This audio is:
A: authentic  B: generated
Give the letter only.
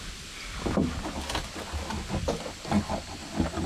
A